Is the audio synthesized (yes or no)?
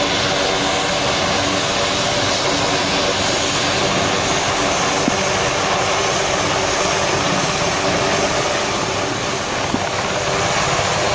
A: no